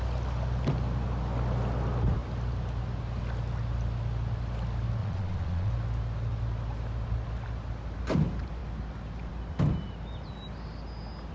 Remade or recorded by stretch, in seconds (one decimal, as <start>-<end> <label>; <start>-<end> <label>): 0.0-5.0 recorded; 5.0-5.7 remade; 5.7-11.3 recorded